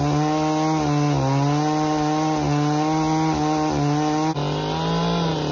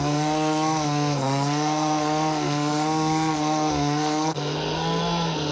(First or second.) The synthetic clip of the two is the second